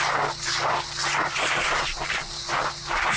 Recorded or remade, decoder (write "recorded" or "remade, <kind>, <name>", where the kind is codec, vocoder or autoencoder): recorded